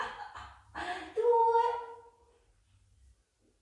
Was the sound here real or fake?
real